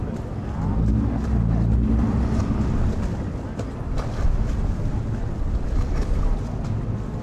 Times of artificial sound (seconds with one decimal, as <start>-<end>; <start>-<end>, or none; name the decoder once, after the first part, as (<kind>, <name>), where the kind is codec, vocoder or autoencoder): none